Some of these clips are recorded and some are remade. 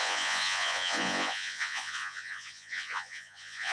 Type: remade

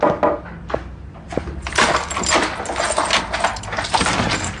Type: recorded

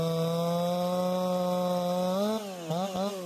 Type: recorded